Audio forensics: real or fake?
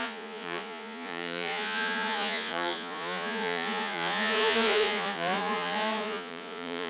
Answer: fake